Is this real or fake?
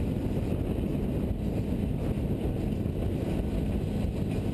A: real